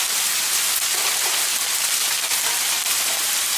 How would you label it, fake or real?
real